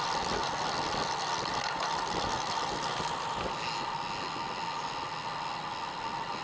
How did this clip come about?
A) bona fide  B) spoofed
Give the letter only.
A